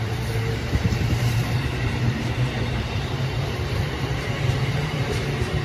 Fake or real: fake